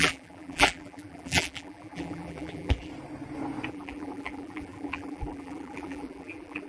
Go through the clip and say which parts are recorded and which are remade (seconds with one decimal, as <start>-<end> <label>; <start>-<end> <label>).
0.0-2.9 remade; 2.9-3.7 recorded; 3.7-6.7 remade